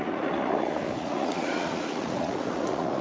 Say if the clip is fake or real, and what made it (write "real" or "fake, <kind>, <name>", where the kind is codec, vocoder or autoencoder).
fake, vocoder, Vocos